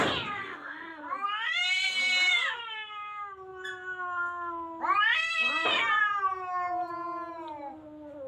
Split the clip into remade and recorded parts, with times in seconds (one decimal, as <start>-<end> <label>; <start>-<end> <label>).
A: 0.0-0.4 recorded; 0.4-1.0 remade; 1.0-8.3 recorded